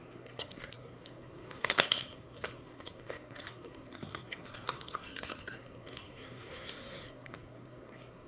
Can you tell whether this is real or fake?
fake